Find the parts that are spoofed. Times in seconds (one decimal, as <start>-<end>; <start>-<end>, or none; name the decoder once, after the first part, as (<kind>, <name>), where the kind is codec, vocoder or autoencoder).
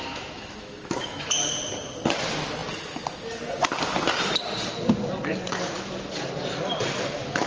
0.0-1.4 (autoencoder, DAC-VAE)